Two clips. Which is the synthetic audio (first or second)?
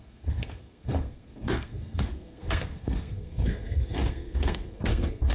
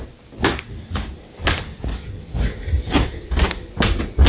first